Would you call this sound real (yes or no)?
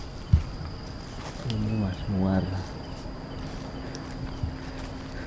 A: yes